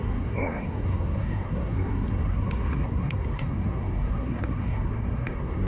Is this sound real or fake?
fake